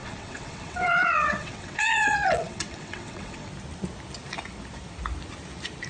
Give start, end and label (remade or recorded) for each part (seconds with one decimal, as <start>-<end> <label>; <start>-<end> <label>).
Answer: 0.0-3.5 remade; 3.5-5.9 recorded